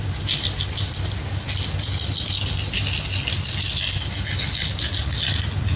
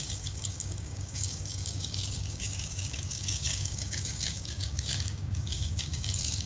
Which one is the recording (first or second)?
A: first